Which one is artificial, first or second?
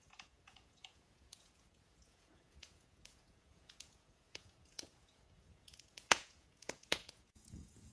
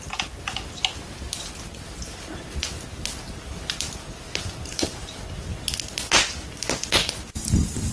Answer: first